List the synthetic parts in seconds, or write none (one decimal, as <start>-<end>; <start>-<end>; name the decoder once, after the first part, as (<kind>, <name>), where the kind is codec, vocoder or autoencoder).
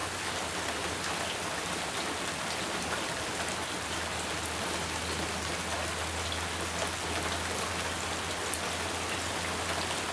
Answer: none